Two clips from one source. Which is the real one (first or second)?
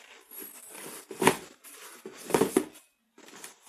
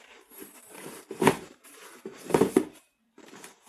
first